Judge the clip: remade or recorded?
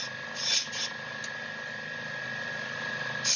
recorded